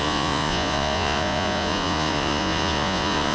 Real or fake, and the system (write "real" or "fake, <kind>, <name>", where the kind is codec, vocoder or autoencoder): fake, vocoder, Vocos